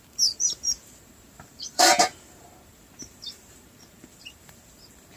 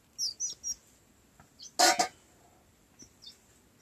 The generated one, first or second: first